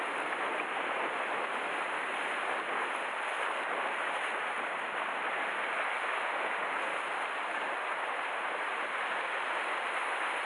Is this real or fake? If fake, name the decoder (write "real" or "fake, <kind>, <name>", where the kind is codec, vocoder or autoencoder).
real